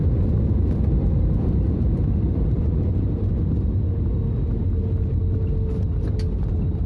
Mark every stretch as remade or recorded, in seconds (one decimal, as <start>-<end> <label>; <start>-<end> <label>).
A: 0.0-3.3 remade; 3.3-6.9 recorded